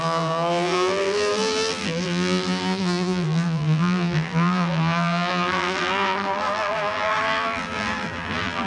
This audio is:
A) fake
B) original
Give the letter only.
A